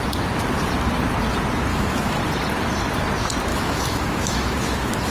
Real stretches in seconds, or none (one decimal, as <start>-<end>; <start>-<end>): 0.0-1.7; 2.2-3.5